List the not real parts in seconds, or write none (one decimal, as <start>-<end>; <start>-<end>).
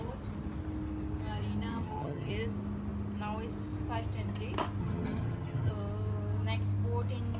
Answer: 1.7-2.3; 4.8-5.7